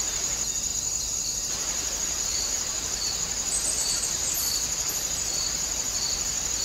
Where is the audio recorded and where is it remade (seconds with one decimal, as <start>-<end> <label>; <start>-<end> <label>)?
0.0-0.7 recorded; 0.7-3.0 remade; 3.0-3.4 recorded; 3.4-4.4 remade; 4.4-6.6 recorded